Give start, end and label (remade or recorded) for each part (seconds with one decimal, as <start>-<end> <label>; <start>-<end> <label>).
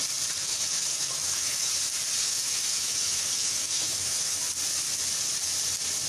0.0-0.4 recorded; 0.4-1.7 remade; 1.7-2.2 recorded; 2.2-4.4 remade; 4.4-6.1 recorded